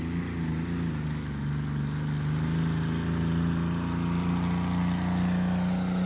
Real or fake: real